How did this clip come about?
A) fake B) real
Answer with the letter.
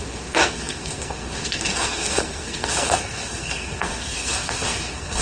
A